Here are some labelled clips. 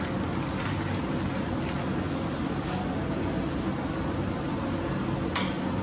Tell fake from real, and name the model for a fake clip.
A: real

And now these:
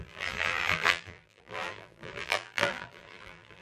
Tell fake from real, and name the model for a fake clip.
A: fake, vocoder, BigVGAN v2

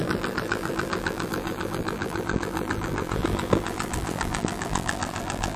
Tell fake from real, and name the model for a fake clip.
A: fake, vocoder, BigVGAN v2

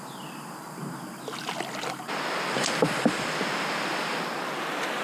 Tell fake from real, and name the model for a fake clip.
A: real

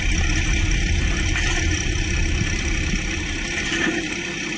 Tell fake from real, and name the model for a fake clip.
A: real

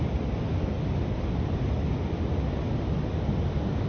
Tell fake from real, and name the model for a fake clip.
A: real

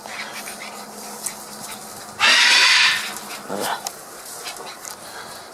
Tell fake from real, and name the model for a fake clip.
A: real